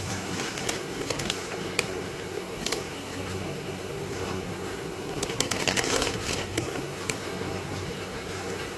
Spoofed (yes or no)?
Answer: yes